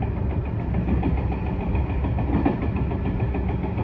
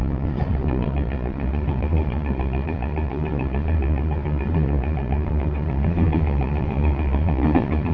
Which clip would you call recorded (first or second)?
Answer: first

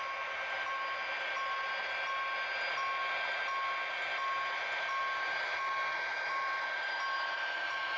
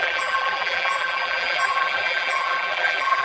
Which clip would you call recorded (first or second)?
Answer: first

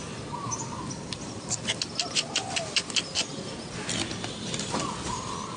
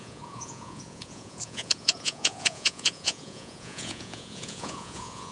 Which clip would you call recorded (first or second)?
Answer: first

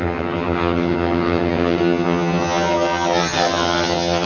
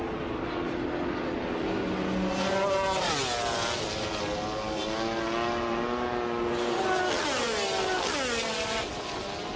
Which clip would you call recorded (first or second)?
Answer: second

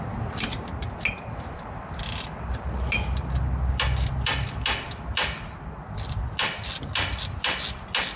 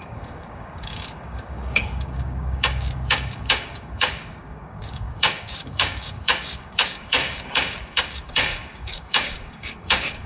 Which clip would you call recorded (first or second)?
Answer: first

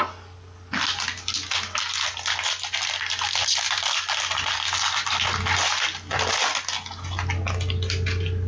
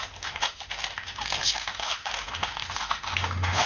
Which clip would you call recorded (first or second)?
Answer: first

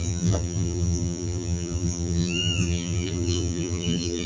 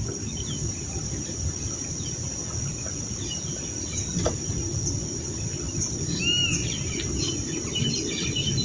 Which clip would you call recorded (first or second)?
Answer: second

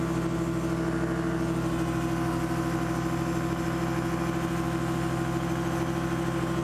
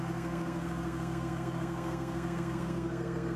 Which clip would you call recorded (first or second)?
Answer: first